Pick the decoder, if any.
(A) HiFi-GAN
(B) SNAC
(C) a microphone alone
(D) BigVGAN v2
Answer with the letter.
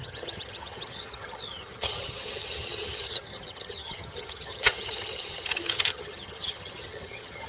A